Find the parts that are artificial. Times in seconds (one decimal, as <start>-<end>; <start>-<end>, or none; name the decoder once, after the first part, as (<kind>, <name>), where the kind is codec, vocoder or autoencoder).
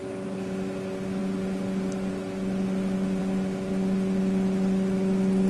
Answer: none